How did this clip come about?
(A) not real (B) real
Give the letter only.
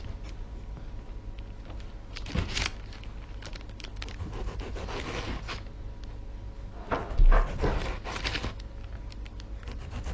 B